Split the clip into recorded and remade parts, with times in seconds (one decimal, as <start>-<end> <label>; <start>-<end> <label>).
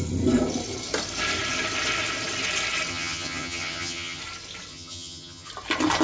0.0-2.9 recorded; 2.9-4.2 remade; 4.2-4.7 recorded; 4.7-5.5 remade; 5.5-6.0 recorded